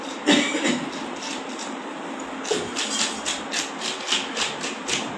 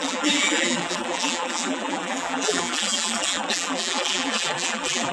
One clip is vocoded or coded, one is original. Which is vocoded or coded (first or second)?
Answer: second